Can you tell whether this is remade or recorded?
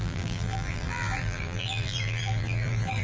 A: remade